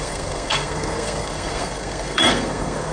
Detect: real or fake fake